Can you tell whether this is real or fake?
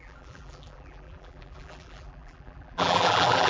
fake